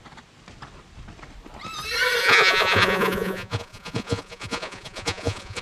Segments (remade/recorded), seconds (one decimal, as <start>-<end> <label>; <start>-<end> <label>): 0.0-2.2 recorded; 2.2-5.6 remade